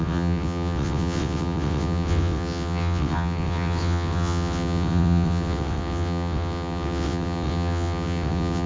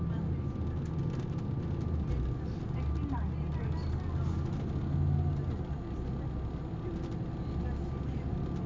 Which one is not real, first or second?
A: first